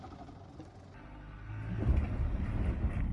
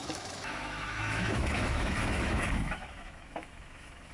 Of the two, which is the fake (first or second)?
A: second